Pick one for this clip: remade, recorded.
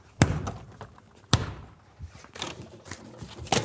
recorded